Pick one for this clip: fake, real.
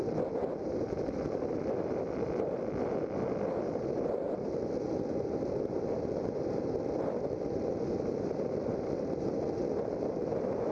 fake